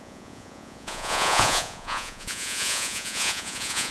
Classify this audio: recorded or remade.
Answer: remade